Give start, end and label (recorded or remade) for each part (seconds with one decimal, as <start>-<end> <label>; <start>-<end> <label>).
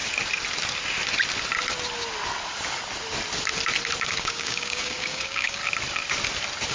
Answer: 0.0-4.0 recorded; 4.0-5.6 remade; 5.6-6.7 recorded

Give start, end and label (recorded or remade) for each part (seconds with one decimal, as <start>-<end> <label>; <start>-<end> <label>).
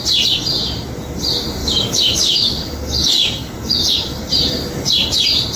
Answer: 0.0-1.6 recorded; 1.6-4.3 remade; 4.3-5.6 recorded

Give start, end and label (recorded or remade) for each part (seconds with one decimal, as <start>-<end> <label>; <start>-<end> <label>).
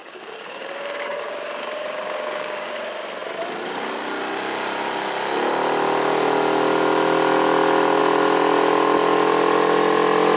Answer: 0.0-2.7 remade; 2.7-10.4 recorded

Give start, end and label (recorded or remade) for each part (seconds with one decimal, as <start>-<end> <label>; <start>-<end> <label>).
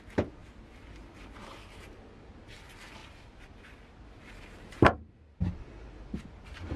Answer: 0.0-6.8 recorded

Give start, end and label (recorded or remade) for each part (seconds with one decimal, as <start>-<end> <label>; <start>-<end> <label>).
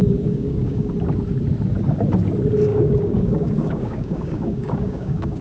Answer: 0.0-0.9 remade; 0.9-2.7 recorded; 2.7-5.4 remade